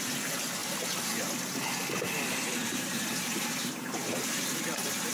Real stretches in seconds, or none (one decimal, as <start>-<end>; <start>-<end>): 0.0-2.6